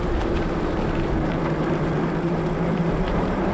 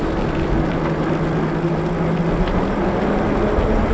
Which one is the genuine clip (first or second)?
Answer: second